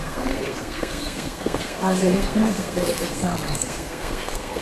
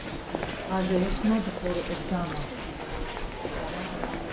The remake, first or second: first